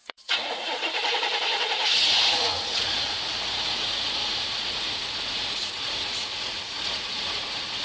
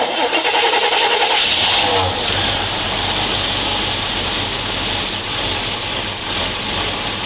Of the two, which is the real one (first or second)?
second